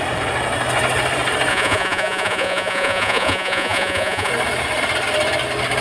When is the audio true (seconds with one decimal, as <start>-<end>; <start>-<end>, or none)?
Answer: 0.0-1.5; 4.3-5.8